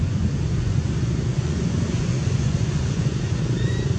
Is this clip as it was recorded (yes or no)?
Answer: no